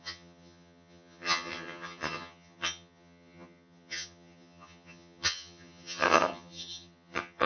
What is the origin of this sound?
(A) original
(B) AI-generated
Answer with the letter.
B